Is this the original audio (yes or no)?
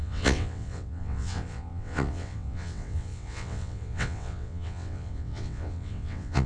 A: no